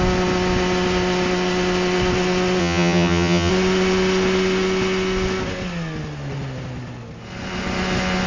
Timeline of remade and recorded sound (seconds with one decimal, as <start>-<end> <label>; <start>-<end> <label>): 0.0-2.6 recorded; 2.6-3.5 remade; 3.5-8.3 recorded